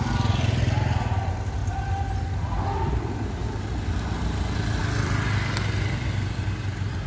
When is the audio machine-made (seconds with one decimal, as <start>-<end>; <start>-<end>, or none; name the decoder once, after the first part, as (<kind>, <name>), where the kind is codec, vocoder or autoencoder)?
none